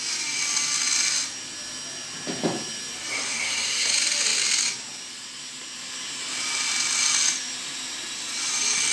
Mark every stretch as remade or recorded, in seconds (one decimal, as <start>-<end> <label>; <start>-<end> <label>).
0.0-3.1 recorded; 3.1-3.9 remade; 3.9-8.9 recorded